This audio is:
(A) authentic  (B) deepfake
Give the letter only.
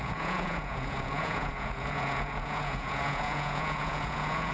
B